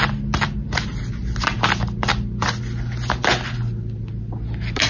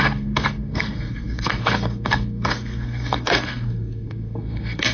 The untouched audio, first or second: first